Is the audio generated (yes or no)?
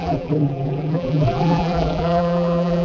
yes